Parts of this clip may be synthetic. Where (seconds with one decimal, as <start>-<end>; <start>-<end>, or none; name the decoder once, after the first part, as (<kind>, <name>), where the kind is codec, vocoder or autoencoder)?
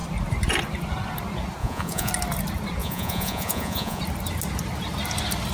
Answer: 1.6-2.1 (vocoder, Vocos); 2.8-4.0